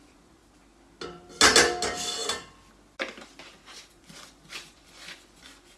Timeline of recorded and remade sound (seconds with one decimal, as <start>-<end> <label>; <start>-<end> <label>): 0.0-0.4 remade; 0.4-3.9 recorded; 3.9-5.8 remade

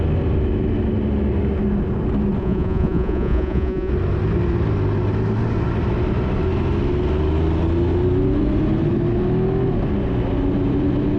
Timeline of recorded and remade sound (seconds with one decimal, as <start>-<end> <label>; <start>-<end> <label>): 0.0-2.4 recorded; 2.4-3.9 remade; 3.9-11.2 recorded